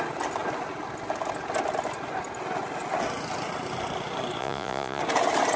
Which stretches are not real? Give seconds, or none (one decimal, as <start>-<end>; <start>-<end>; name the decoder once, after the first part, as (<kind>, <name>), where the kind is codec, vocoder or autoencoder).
4.4-5.0 (vocoder, Vocos)